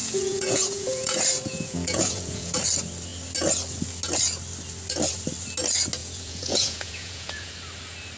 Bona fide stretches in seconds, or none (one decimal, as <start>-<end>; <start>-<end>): 2.6-6.0; 7.5-8.2